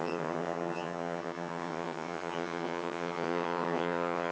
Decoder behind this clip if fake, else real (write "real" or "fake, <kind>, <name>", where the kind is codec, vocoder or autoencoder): fake, vocoder, HiFi-GAN